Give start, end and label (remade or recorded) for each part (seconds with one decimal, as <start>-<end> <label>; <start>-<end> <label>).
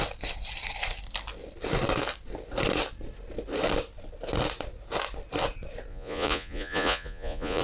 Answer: 0.0-5.9 recorded; 5.9-7.6 remade